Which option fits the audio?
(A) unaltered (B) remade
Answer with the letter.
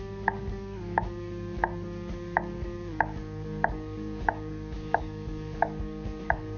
B